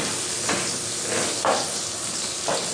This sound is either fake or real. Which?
real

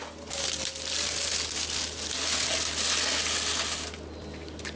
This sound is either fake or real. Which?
real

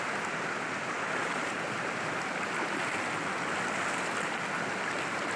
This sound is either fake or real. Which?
real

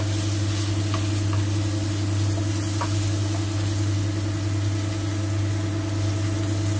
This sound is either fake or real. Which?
real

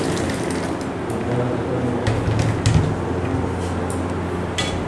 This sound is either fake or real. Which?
real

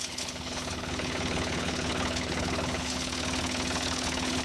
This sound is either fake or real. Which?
fake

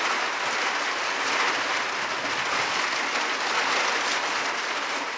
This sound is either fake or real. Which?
real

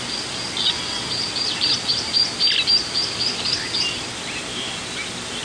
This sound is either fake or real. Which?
real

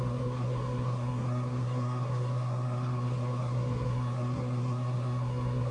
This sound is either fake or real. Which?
fake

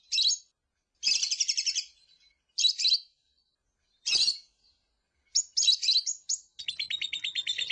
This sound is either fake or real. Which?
real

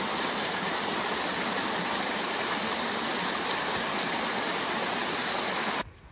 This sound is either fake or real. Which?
real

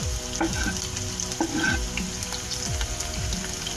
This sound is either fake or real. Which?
real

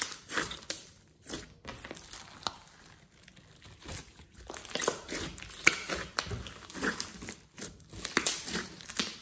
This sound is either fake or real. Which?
real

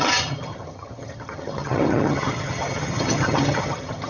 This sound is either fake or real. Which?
fake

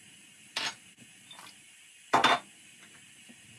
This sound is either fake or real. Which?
real